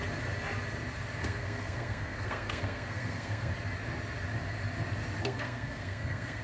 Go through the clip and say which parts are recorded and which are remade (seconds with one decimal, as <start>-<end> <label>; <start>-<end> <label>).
0.0-1.2 recorded; 1.2-3.5 remade; 3.5-5.2 recorded; 5.2-6.4 remade

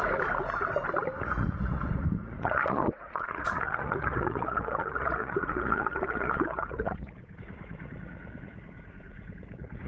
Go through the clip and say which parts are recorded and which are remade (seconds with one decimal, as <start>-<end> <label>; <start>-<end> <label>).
0.0-1.2 recorded; 1.2-9.9 remade

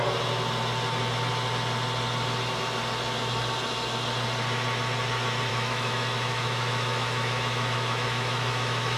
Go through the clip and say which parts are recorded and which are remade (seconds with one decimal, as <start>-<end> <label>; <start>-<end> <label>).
0.0-5.5 recorded; 5.5-9.0 remade

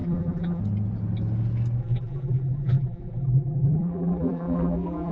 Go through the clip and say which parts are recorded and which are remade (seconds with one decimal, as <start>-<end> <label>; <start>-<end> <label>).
0.0-0.6 remade; 0.6-1.8 recorded; 1.8-5.1 remade

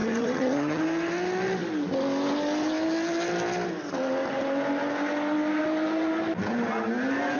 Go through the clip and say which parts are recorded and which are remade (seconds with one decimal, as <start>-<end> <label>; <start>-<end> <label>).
0.0-0.8 remade; 0.8-7.4 recorded

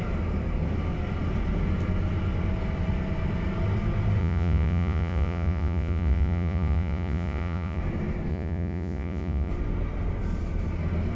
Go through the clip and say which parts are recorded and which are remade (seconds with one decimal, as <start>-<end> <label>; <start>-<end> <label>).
0.0-4.2 recorded; 4.2-7.8 remade; 7.8-8.3 recorded; 8.3-9.5 remade; 9.5-11.2 recorded